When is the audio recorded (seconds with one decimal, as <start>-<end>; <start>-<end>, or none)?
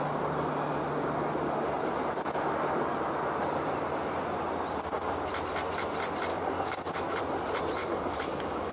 0.0-6.3; 7.2-7.8